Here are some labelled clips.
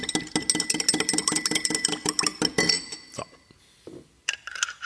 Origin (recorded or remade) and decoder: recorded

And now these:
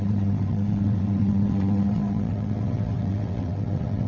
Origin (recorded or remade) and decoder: remade, vocoder, WaveNeXt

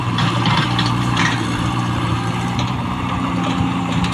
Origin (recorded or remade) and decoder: remade, vocoder, BigVGAN v2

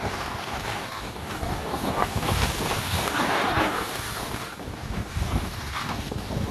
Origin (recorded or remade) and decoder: remade, codec, DAC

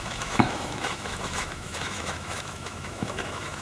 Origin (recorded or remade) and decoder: remade, autoencoder, DAC-VAE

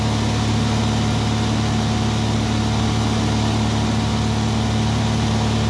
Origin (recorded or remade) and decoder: recorded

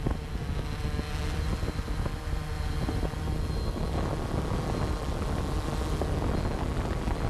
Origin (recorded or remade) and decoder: recorded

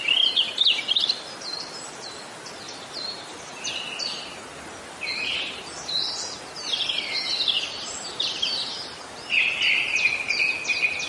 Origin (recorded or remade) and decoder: recorded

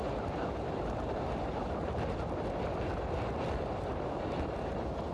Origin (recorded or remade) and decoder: recorded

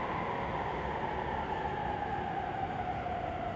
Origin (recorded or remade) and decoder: recorded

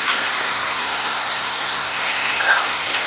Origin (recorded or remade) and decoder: remade, codec, SNAC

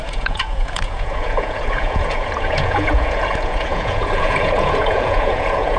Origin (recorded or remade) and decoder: remade, vocoder, Vocos